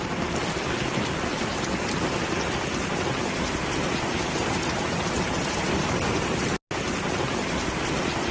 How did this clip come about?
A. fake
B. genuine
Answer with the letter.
B